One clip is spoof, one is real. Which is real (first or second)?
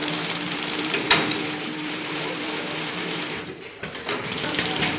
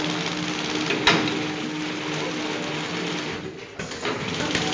second